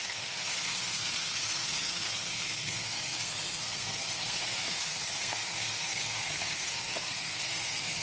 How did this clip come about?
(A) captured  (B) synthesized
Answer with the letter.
B